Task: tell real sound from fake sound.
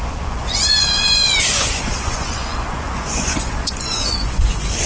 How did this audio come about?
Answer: fake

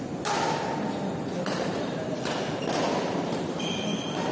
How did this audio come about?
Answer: real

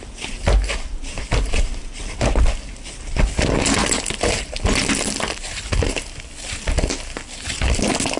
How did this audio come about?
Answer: real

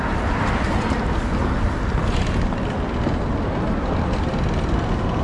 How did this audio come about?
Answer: real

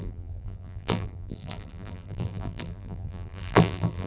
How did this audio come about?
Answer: fake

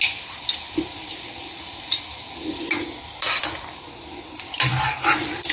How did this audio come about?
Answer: real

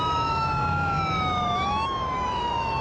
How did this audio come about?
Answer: fake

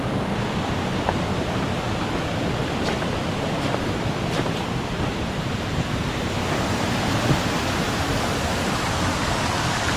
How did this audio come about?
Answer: fake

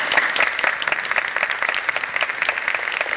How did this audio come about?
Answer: real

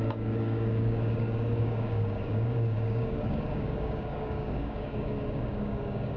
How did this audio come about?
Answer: fake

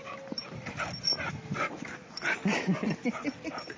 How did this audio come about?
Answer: real